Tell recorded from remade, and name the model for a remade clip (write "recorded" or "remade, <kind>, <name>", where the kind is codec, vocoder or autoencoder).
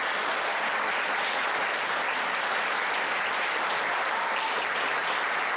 recorded